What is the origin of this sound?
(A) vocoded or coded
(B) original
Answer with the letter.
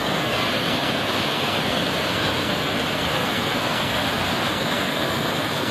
A